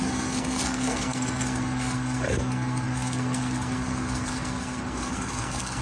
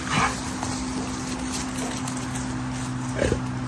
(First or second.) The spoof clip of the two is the first